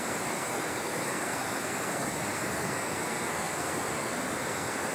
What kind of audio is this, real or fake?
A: fake